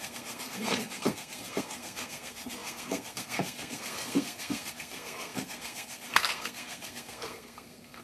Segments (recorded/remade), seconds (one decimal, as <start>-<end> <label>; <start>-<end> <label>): 0.0-8.0 remade